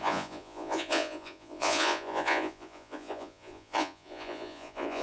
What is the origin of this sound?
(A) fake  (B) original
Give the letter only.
A